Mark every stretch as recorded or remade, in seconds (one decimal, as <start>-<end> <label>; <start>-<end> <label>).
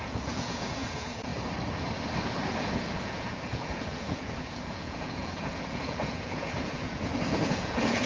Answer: 0.0-1.3 remade; 1.3-2.4 recorded; 2.4-8.1 remade